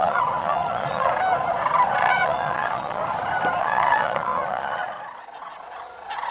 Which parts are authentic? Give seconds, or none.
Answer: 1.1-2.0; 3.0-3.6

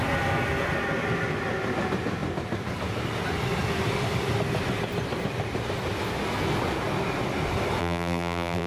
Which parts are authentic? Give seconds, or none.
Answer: 0.0-7.8

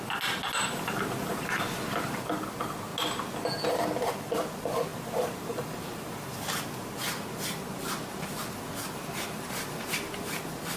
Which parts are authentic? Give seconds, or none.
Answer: 0.0-4.9; 6.6-10.8

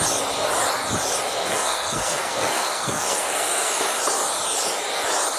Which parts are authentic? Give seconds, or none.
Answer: 0.0-1.4; 3.7-5.4

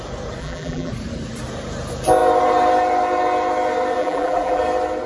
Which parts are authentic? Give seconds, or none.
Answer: 0.0-0.4; 0.9-4.0; 4.6-5.1

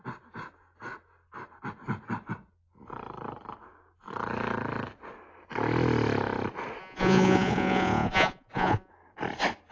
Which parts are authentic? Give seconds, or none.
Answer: 0.0-6.8; 8.9-9.7

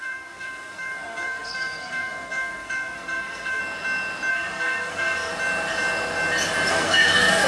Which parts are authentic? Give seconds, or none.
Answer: 3.6-4.3; 5.3-6.7

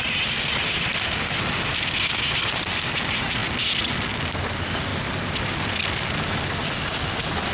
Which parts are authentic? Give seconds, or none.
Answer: 0.0-7.5